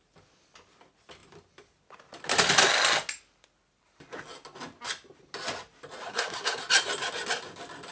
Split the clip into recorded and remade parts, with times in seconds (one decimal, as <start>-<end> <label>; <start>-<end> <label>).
0.0-6.1 recorded; 6.1-6.6 remade; 6.6-7.9 recorded